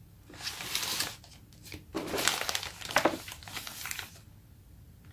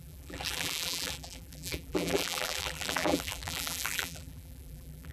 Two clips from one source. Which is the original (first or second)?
first